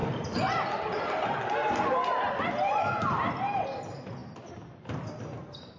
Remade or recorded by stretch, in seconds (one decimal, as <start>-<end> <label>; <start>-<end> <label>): 0.0-5.8 recorded